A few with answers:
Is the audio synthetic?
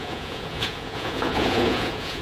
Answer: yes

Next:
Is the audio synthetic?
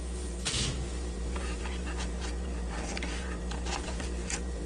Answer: yes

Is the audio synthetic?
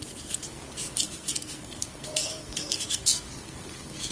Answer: yes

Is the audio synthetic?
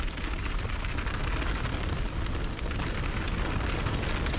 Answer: no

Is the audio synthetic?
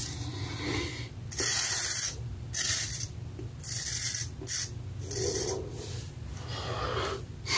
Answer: no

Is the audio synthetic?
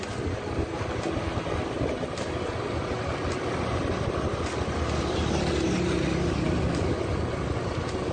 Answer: no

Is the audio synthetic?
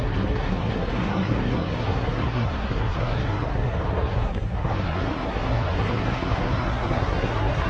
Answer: yes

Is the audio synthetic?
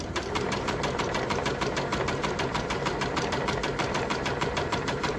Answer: yes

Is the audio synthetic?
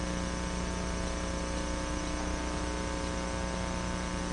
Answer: no